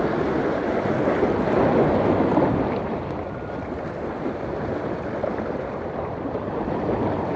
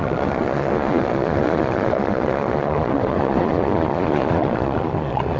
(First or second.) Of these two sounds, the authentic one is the first